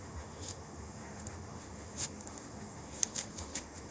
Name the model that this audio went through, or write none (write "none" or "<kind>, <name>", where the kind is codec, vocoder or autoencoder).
autoencoder, DAC-VAE